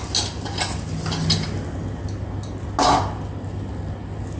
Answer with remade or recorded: recorded